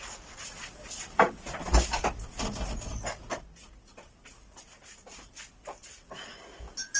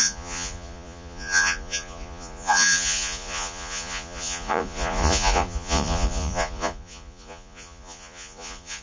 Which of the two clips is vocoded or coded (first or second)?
second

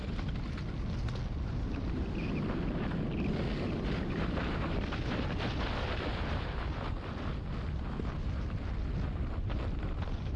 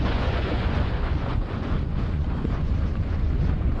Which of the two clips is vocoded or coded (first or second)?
second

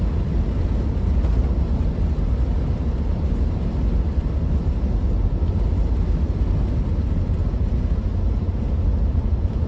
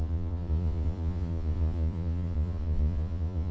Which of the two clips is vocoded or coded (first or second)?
second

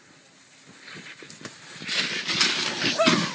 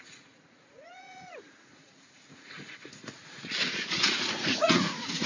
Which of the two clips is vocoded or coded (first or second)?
second